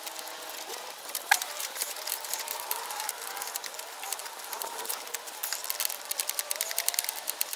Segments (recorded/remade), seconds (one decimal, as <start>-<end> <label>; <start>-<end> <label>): 0.0-0.7 recorded; 0.7-3.3 remade; 3.3-4.2 recorded; 4.2-4.9 remade; 4.9-7.6 recorded